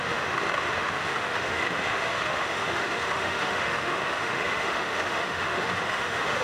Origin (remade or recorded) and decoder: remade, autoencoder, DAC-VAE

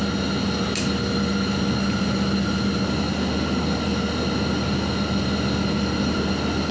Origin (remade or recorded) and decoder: recorded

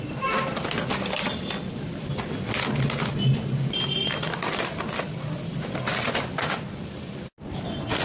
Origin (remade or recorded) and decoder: recorded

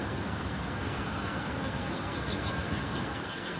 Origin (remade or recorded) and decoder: remade, codec, SNAC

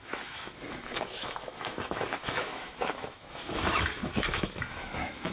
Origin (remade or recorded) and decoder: remade, autoencoder, DAC-VAE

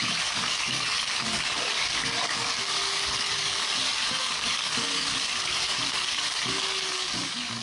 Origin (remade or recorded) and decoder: remade, codec, DAC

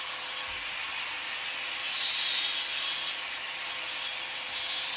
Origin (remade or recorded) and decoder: recorded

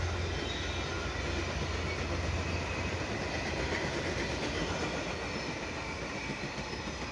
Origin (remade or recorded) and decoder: recorded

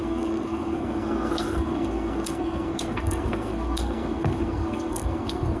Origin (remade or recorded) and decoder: remade, codec, SNAC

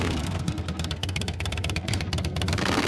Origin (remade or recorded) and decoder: remade, codec, SNAC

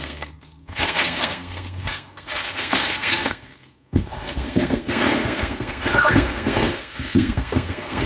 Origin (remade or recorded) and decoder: remade, codec, SNAC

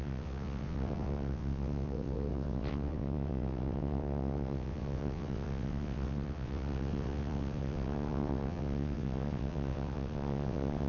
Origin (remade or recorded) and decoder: remade, vocoder, WaveNeXt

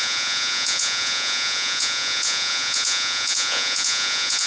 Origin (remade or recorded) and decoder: remade, vocoder, Vocos